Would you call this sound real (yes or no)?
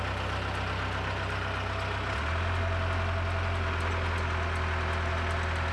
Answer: yes